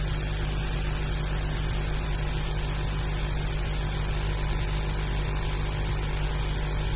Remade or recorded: recorded